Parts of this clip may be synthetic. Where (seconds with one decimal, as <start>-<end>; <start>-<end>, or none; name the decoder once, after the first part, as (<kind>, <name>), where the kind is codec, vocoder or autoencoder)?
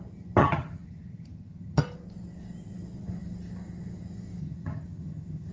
0.4-1.8 (vocoder, HiFi-GAN); 4.4-5.5